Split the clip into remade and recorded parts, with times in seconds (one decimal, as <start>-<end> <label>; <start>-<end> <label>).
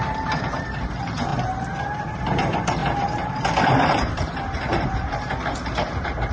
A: 0.0-6.3 remade